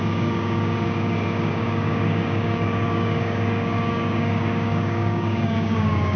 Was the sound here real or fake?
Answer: fake